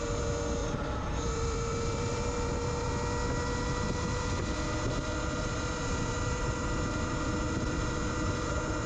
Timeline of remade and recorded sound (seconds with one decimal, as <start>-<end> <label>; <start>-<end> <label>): 0.0-0.6 recorded; 0.6-2.9 remade; 2.9-5.5 recorded; 5.5-8.9 remade

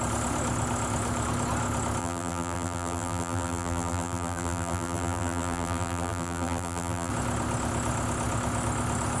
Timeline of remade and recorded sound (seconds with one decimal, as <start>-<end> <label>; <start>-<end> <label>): 0.0-2.0 recorded; 2.0-7.1 remade; 7.1-9.2 recorded

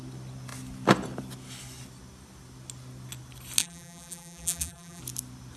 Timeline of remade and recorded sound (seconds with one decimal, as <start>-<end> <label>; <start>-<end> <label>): 0.0-3.6 recorded; 3.6-5.0 remade; 5.0-5.6 recorded

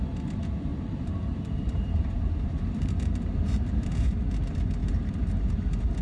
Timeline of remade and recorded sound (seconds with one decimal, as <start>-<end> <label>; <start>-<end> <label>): 0.0-0.7 recorded; 0.7-4.3 remade; 4.3-4.8 recorded; 4.8-5.5 remade; 5.5-6.0 recorded

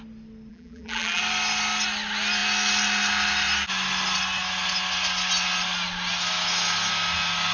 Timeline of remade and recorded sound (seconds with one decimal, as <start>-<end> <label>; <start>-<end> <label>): 0.0-0.5 recorded; 0.5-1.2 remade; 1.2-7.5 recorded